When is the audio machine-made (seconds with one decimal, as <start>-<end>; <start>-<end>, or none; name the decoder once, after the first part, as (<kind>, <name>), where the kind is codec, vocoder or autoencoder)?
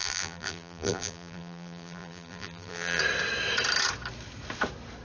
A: 0.0-3.0 (vocoder, BigVGAN v2)